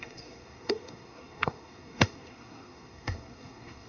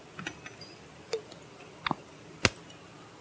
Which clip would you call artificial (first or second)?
first